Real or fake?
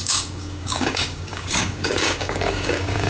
fake